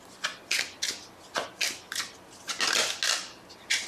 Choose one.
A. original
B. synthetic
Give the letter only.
A